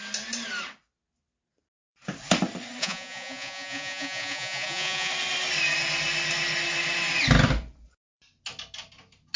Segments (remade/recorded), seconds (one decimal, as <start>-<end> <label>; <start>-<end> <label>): 0.0-2.8 recorded; 2.8-5.1 remade; 5.1-9.4 recorded